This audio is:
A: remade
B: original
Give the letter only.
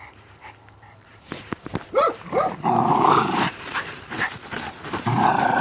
A